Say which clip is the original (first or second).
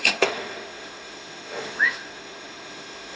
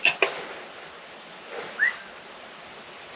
second